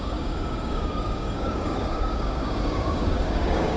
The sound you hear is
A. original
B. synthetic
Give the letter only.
B